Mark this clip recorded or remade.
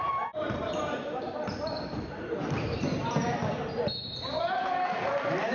remade